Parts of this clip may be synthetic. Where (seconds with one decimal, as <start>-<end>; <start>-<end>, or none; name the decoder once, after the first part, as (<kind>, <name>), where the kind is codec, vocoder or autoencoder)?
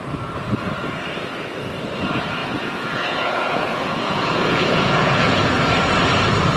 2.4-5.6 (vocoder, Vocos)